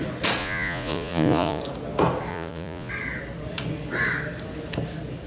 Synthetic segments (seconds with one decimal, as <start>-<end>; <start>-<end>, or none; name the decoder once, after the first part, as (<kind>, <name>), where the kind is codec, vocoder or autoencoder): 0.4-1.6 (vocoder, Vocos); 2.3-2.9